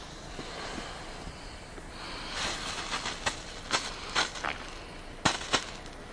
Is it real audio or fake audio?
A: real